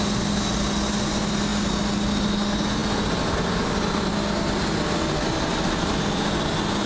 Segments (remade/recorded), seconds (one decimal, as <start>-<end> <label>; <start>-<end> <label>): 0.0-6.9 recorded